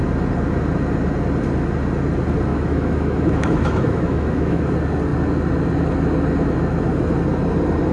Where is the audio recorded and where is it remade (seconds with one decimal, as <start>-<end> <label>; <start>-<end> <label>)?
0.0-2.5 recorded; 2.5-4.6 remade; 4.6-7.9 recorded